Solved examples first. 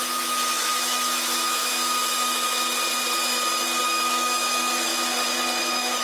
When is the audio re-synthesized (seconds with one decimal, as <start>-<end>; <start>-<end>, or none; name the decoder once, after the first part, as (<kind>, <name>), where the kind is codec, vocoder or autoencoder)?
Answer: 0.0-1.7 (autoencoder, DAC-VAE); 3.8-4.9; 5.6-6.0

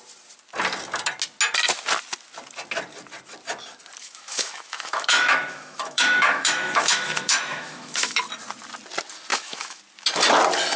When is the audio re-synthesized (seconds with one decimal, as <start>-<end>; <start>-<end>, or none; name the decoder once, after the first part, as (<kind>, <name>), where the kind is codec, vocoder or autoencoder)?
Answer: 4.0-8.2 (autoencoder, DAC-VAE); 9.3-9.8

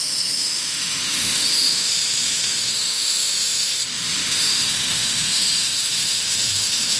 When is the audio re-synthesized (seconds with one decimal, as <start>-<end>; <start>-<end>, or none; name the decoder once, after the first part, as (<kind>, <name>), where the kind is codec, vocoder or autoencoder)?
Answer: 0.0-7.0 (autoencoder, DAC-VAE)

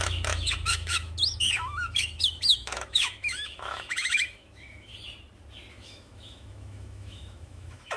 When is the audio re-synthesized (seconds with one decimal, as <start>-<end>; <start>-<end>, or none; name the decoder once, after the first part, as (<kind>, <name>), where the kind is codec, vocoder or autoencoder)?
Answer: 0.0-4.9 (autoencoder, DAC-VAE); 5.7-8.0

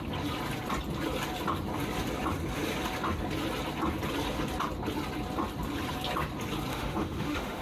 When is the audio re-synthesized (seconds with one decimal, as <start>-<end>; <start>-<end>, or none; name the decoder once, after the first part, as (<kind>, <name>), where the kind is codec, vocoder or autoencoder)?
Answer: 6.7-7.6 (autoencoder, DAC-VAE)